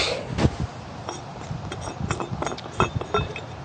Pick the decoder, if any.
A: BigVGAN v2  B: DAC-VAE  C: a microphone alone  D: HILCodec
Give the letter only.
C